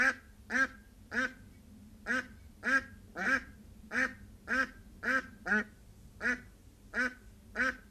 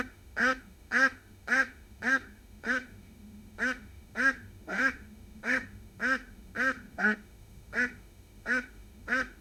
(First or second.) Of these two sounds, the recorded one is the first